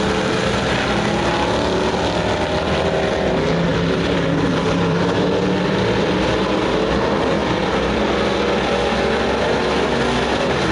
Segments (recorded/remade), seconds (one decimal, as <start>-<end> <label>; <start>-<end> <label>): 0.0-3.7 recorded; 3.7-6.1 remade; 6.1-7.4 recorded; 7.4-8.0 remade; 8.0-10.7 recorded